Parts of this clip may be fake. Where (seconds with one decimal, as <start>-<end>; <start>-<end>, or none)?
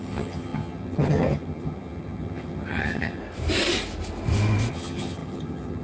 0.0-3.2; 4.7-5.8